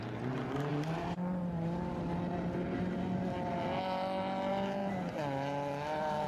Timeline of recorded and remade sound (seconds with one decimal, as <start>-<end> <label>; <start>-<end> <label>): 0.0-6.3 recorded